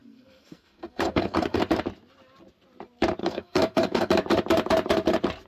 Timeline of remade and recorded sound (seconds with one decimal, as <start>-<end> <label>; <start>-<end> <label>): 0.0-1.6 remade; 1.6-3.2 recorded; 3.2-4.1 remade; 4.1-5.5 recorded

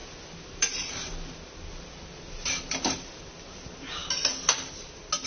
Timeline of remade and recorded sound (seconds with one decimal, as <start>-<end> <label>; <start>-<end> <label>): 0.0-5.3 recorded

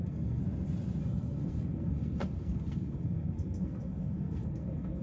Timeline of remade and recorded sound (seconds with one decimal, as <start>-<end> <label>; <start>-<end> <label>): 0.0-0.4 remade; 0.4-1.0 recorded; 1.0-5.0 remade

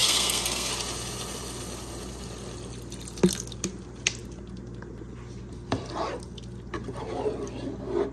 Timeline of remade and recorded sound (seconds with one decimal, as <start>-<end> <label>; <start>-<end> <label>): 0.0-0.7 remade; 0.7-8.1 recorded

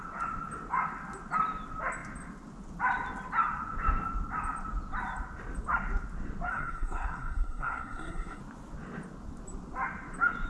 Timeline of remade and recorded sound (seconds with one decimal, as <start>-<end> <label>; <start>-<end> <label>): 0.0-6.5 recorded; 6.5-8.4 remade; 8.4-10.5 recorded